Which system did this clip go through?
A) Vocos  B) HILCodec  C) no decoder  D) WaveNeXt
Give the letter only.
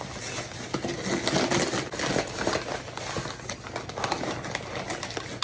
C